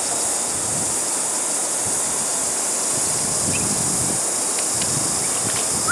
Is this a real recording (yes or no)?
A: yes